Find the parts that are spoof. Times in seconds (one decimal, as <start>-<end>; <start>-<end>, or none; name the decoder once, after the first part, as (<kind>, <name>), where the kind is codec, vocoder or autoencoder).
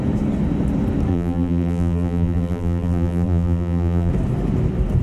1.1-4.1 (vocoder, BigVGAN v2)